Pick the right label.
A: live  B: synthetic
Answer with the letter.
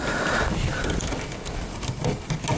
A